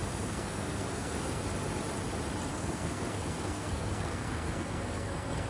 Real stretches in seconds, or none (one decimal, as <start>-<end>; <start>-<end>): 1.4-2.5